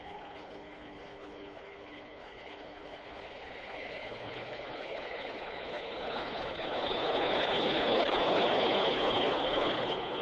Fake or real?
fake